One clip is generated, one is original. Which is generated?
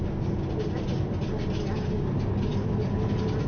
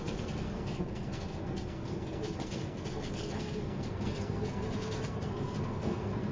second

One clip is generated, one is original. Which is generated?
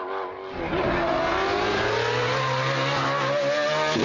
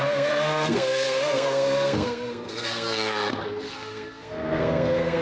second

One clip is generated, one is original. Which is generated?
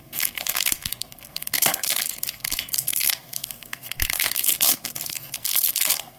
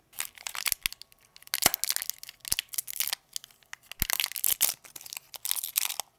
first